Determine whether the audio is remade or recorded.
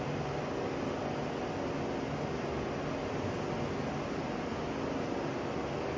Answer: recorded